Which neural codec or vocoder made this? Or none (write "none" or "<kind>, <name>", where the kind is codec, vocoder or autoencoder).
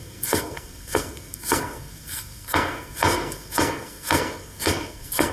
codec, SNAC